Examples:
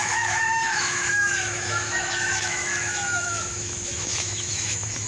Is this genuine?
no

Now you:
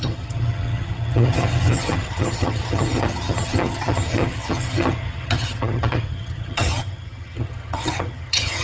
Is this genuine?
no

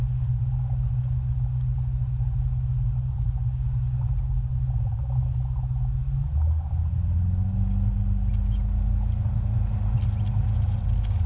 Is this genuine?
yes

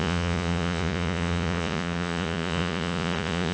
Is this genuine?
no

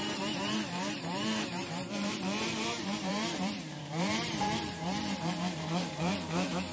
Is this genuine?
no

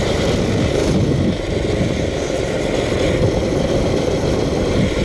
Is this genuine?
yes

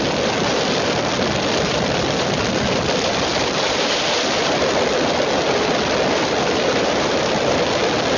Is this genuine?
no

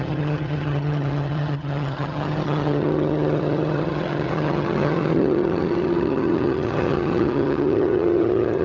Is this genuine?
no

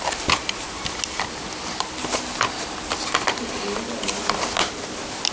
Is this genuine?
yes